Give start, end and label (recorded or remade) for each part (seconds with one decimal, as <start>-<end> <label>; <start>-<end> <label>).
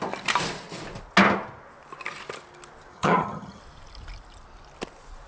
0.0-2.9 recorded; 2.9-3.6 remade; 3.6-5.3 recorded